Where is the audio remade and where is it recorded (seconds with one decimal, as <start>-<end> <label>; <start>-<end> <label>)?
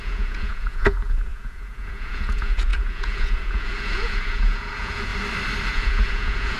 0.0-5.1 remade; 5.1-5.7 recorded; 5.7-6.6 remade